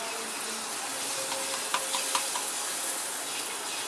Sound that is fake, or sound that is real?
real